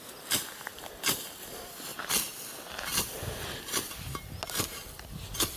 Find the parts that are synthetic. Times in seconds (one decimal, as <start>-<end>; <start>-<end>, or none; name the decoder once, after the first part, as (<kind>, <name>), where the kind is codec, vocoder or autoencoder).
none